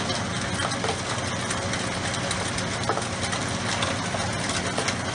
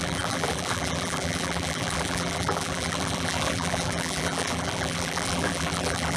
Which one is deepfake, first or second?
second